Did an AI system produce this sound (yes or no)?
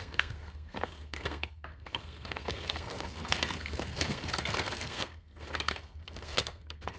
yes